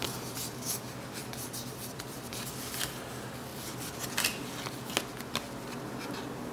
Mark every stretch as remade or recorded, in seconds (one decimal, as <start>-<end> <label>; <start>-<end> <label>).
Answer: 0.0-1.2 recorded; 1.2-2.7 remade; 2.7-3.5 recorded; 3.5-4.0 remade; 4.0-6.5 recorded